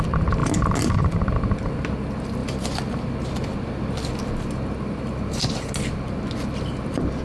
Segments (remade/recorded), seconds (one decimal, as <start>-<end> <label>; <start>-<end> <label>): 0.0-7.2 recorded

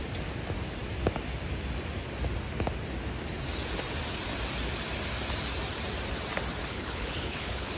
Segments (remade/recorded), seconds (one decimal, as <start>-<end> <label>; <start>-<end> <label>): 0.0-6.6 recorded; 6.6-7.8 remade

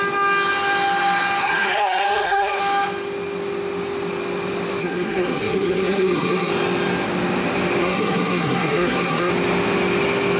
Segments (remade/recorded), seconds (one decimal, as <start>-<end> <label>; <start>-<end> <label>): 0.0-1.4 recorded; 1.4-2.6 remade; 2.6-4.8 recorded; 4.8-6.5 remade; 6.5-7.8 recorded; 7.8-9.3 remade; 9.3-10.4 recorded